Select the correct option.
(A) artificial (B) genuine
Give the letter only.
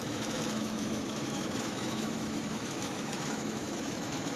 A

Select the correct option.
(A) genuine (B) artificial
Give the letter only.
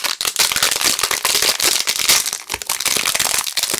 A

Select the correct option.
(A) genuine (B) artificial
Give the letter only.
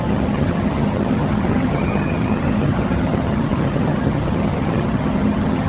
B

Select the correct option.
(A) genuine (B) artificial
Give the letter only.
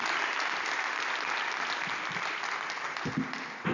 A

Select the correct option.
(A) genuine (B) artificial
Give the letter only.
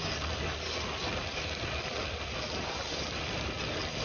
A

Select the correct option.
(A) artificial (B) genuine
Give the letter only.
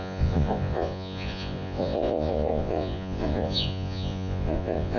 A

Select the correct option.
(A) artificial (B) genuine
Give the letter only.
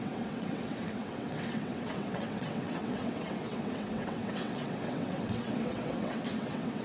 A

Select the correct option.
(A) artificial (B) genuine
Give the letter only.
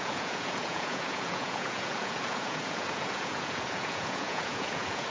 A